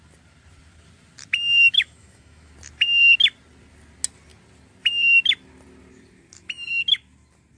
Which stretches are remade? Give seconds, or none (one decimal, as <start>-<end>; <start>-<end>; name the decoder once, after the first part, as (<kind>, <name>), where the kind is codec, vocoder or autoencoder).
1.6-2.5 (autoencoder, DAC-VAE)